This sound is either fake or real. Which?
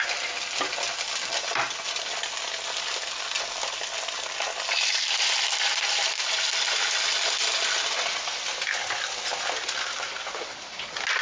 real